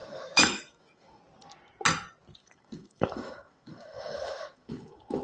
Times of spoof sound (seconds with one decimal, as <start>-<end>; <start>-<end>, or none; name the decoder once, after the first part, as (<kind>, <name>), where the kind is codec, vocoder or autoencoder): 0.0-1.2 (autoencoder, DAC-VAE); 2.4-5.2